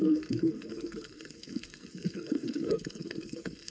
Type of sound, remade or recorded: remade